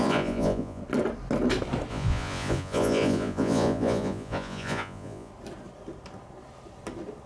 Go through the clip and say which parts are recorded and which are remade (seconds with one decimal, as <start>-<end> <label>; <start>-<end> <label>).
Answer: 0.0-0.8 remade; 0.8-1.9 recorded; 1.9-5.3 remade; 5.3-7.3 recorded